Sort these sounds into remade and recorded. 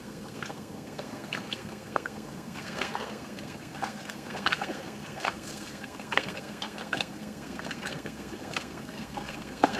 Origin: remade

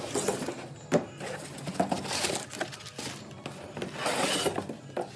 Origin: recorded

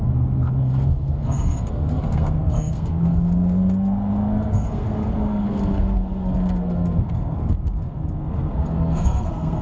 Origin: remade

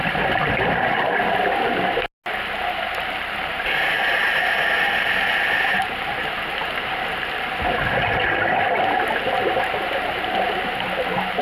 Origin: recorded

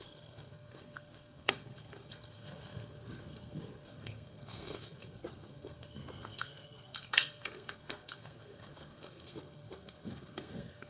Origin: remade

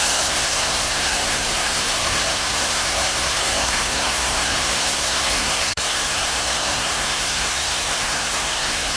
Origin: remade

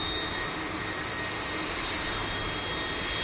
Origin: recorded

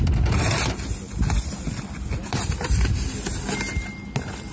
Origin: recorded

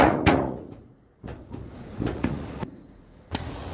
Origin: remade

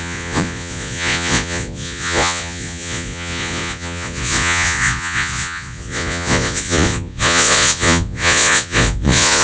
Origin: remade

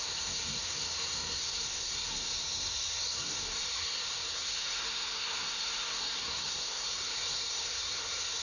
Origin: remade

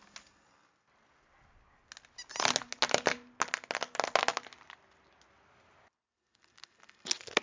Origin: recorded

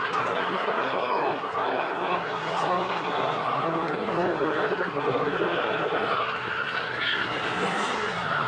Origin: remade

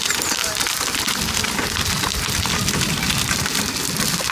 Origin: remade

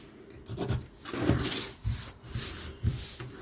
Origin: recorded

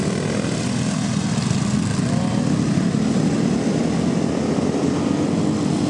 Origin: recorded